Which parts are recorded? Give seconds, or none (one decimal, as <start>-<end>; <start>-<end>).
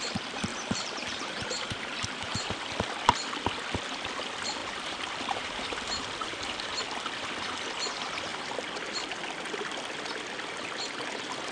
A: 0.0-0.5; 2.5-4.6; 6.8-11.5